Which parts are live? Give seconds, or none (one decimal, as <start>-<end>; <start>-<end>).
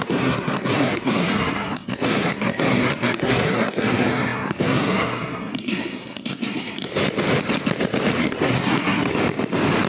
6.9-8.2; 9.1-9.9